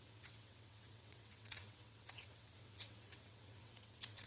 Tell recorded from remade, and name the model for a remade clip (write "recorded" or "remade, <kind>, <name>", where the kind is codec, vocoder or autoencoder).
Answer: remade, vocoder, WaveNeXt